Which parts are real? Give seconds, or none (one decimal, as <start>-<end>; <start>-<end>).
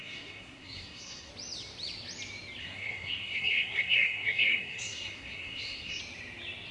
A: 1.3-2.6; 6.0-6.7